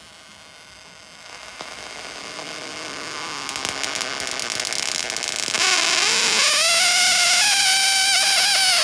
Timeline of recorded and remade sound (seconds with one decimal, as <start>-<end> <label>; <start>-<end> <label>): 0.0-8.8 recorded